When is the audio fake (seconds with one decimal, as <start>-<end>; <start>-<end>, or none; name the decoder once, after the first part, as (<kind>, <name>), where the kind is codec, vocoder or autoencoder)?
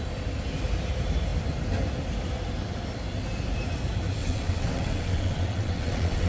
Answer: 4.2-6.3 (vocoder, WaveNeXt)